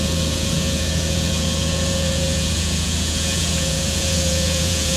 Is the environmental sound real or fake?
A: fake